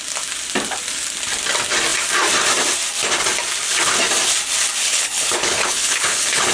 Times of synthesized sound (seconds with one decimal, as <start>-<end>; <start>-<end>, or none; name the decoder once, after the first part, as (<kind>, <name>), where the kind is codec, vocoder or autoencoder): 4.8-6.5 (codec, HILCodec)